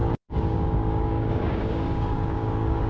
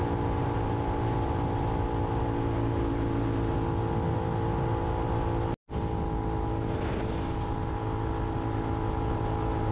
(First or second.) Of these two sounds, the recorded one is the second